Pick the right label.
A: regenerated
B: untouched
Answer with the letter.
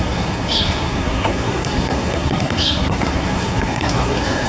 A